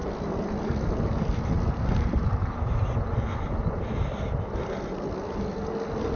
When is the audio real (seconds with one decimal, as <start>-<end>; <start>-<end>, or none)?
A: 0.0-6.2